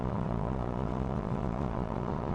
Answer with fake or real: fake